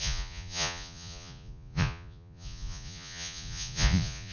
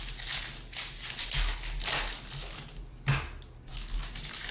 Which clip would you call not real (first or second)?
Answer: first